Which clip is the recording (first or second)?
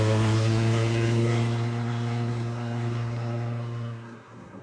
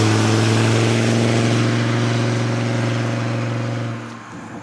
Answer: second